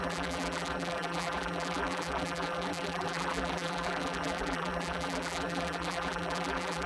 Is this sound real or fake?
fake